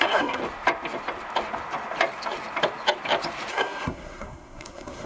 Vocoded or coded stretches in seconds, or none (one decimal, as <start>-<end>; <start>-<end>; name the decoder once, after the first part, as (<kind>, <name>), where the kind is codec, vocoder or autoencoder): 0.0-0.4 (codec, SNAC); 3.5-5.1

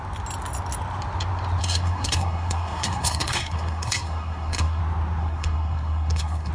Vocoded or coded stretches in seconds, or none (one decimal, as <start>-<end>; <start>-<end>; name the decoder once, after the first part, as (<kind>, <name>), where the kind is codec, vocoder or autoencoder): 1.6-4.8 (codec, SNAC); 5.2-6.5

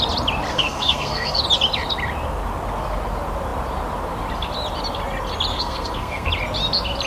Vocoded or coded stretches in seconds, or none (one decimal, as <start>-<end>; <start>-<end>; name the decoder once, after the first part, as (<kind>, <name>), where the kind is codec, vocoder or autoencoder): 0.5-1.4 (codec, SNAC); 5.5-6.3

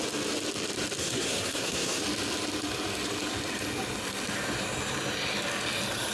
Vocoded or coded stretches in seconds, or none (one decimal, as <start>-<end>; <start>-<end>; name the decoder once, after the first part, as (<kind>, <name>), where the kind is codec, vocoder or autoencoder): 1.0-2.0 (codec, SNAC)

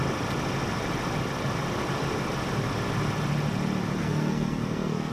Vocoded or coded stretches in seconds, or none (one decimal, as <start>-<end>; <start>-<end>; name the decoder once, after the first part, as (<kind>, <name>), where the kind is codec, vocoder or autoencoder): 4.0-5.1 (codec, SNAC)